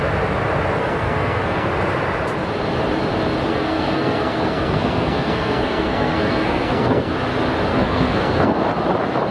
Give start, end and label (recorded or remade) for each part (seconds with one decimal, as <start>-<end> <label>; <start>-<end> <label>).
0.0-0.8 recorded; 0.8-1.7 remade; 1.7-3.5 recorded; 3.5-7.1 remade; 7.1-7.7 recorded; 7.7-8.6 remade; 8.6-9.3 recorded